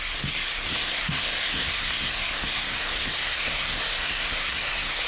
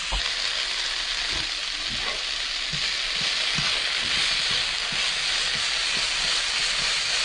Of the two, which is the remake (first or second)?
first